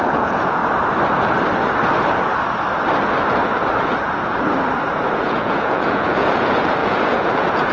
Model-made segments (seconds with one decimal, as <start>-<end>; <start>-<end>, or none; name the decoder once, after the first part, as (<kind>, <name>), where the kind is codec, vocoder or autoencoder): 0.0-0.6 (vocoder, Vocos); 5.2-7.7

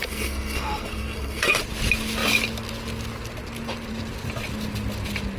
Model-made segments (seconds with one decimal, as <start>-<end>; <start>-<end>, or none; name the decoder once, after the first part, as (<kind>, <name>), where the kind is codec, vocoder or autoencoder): 0.0-1.6 (codec, SNAC)

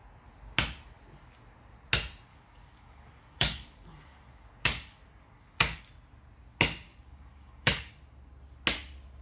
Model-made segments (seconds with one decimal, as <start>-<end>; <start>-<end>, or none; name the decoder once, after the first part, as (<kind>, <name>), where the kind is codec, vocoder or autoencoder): 2.3-5.8 (codec, DAC); 6.9-7.9

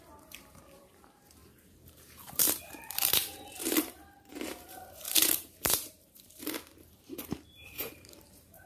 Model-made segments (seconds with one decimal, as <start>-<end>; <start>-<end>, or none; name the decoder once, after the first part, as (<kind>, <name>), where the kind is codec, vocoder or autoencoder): 0.0-8.7 (vocoder, BigVGAN v2)